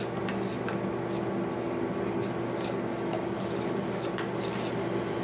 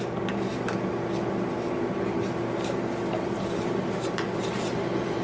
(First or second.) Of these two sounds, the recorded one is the first